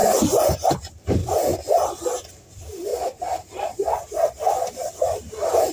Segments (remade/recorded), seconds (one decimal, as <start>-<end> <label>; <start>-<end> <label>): 0.0-1.5 remade; 1.5-2.3 recorded; 2.3-5.7 remade